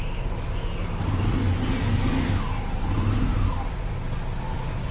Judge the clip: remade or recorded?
recorded